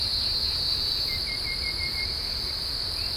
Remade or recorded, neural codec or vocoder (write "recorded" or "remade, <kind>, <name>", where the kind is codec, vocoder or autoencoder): recorded